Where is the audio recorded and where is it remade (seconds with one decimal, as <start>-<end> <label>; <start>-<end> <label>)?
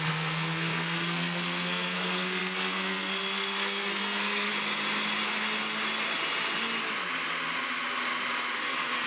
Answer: 0.0-4.5 remade; 4.5-8.6 recorded; 8.6-9.1 remade